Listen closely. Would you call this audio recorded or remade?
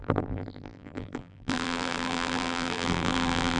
remade